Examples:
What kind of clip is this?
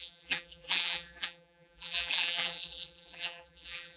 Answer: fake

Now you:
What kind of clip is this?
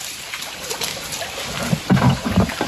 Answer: real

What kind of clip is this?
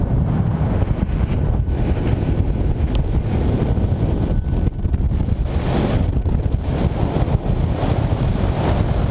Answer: real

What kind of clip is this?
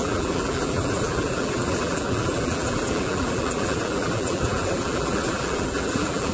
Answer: fake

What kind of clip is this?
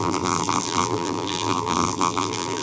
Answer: fake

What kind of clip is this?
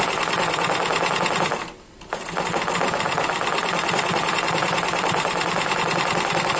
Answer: fake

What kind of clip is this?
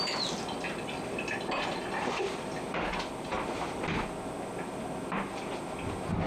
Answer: real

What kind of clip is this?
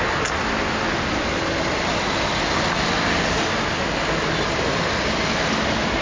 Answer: real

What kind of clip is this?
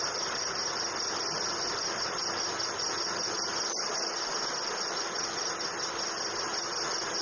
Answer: real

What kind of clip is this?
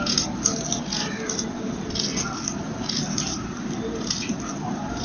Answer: real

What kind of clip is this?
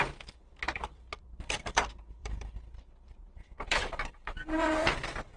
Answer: fake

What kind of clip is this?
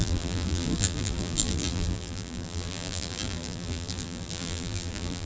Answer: fake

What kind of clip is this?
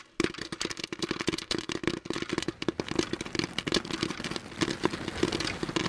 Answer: real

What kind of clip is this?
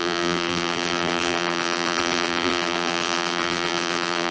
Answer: fake